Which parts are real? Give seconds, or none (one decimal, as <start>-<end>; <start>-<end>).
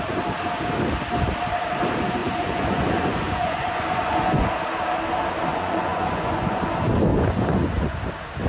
0.0-2.2; 4.5-5.5; 6.6-7.1; 8.0-8.5